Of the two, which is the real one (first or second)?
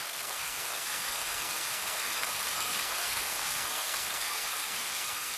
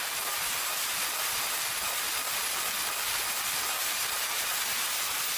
second